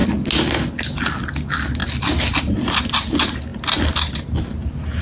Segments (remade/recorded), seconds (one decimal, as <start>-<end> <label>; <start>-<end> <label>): 0.0-5.0 recorded